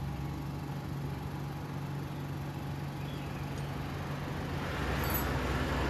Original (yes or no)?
yes